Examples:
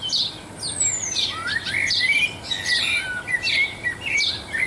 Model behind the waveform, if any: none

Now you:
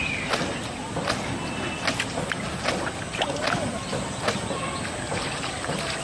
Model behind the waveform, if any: none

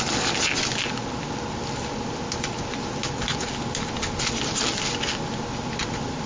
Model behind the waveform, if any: none